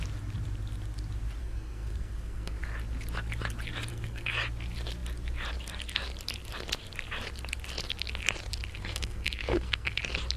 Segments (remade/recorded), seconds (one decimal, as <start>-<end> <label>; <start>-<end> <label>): 0.0-1.4 recorded; 1.4-2.6 remade; 2.6-3.9 recorded; 3.9-4.4 remade; 4.4-8.7 recorded; 8.7-10.0 remade; 10.0-10.4 recorded